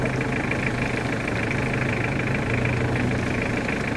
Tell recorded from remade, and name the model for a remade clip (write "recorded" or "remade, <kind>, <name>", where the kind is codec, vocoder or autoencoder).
recorded